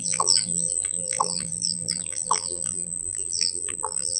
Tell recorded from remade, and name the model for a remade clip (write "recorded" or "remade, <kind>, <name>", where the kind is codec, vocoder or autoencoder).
remade, vocoder, BigVGAN v2